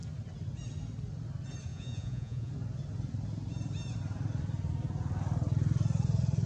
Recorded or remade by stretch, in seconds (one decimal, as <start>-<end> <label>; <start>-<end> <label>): 0.0-1.7 recorded; 1.7-2.5 remade; 2.5-6.5 recorded